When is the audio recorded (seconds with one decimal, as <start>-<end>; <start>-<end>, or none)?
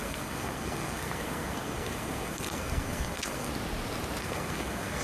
3.5-4.2